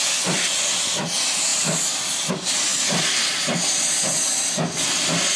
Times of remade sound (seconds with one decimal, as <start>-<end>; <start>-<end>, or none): none